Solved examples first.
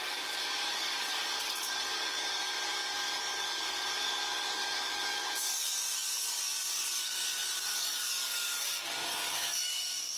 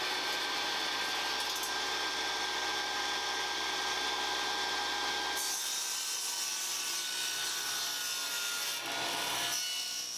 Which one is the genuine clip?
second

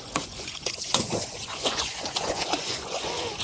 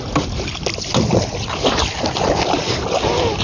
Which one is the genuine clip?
second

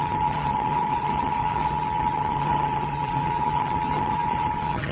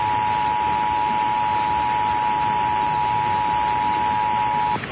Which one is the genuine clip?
second